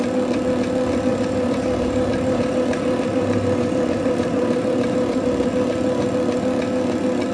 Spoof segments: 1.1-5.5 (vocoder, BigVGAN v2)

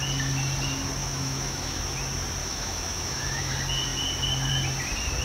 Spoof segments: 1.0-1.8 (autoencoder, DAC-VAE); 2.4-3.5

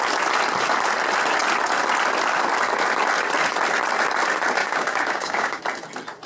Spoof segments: 4.6-5.6 (codec, DAC)